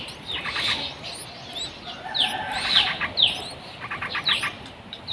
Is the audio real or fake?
real